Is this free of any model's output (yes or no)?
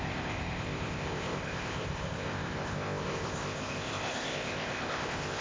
no